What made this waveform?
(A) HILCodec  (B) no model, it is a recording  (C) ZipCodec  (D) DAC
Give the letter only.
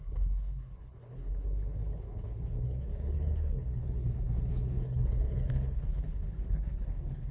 A